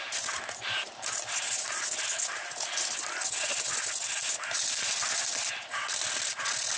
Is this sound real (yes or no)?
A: yes